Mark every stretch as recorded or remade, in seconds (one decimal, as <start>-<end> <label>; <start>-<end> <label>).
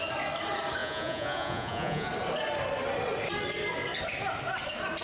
0.0-0.8 recorded; 0.8-2.1 remade; 2.1-5.0 recorded